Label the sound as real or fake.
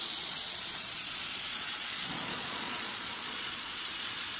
fake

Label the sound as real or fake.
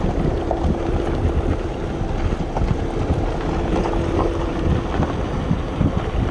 real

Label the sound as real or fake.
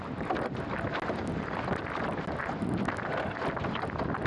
real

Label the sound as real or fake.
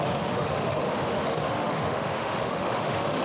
fake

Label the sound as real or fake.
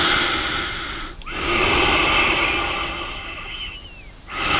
real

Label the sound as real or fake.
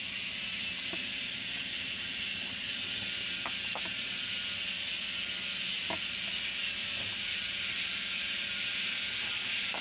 real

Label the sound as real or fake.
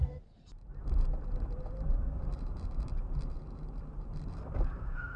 fake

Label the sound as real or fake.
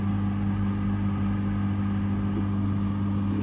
real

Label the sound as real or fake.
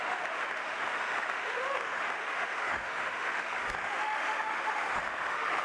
fake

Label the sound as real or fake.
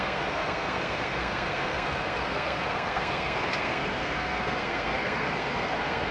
fake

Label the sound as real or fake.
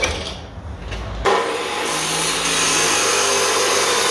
real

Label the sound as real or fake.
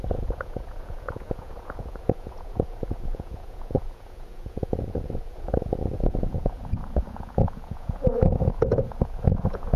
fake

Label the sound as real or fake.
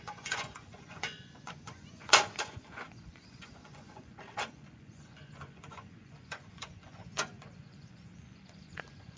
fake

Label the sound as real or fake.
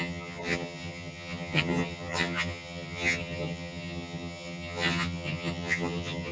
fake